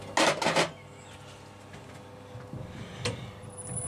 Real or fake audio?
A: real